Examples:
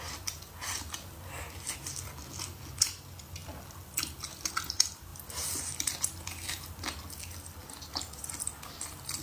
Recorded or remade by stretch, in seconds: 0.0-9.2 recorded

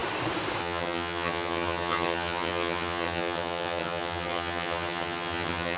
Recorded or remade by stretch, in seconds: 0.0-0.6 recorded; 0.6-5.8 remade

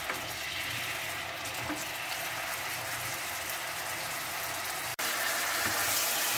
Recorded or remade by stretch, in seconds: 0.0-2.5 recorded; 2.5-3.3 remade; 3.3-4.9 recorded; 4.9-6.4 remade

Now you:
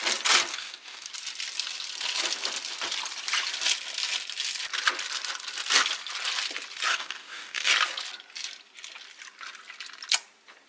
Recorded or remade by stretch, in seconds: 0.0-0.5 recorded; 0.5-1.1 remade; 1.1-6.9 recorded; 6.9-7.7 remade; 7.7-10.7 recorded

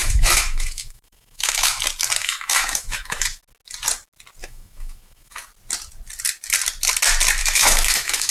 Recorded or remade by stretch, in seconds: 0.0-1.8 remade; 1.8-2.2 recorded; 2.2-3.4 remade; 3.4-4.4 recorded; 4.4-5.5 remade; 5.5-7.4 recorded; 7.4-8.3 remade

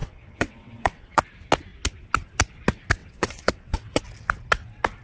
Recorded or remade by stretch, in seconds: 0.0-1.2 remade; 1.2-3.0 recorded; 3.0-4.0 remade; 4.0-5.0 recorded

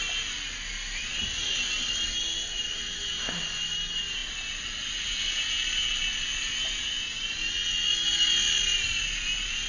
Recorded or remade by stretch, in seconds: 0.0-9.7 recorded

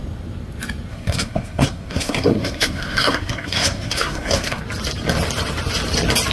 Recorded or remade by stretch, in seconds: 0.0-0.9 recorded; 0.9-4.6 remade; 4.6-6.3 recorded